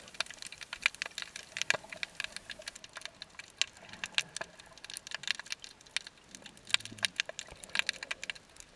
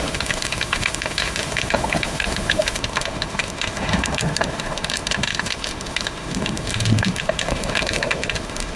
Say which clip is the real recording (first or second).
first